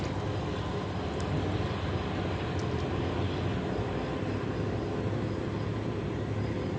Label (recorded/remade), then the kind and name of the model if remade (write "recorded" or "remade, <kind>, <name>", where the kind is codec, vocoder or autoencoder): recorded